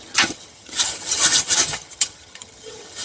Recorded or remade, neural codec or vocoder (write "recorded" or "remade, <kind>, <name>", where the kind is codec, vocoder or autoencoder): remade, vocoder, HiFi-GAN